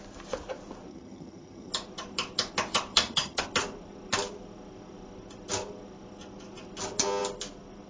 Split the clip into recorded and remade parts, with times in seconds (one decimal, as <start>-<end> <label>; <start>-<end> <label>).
0.0-0.9 recorded; 0.9-1.7 remade; 1.7-2.9 recorded; 2.9-3.4 remade; 3.4-7.9 recorded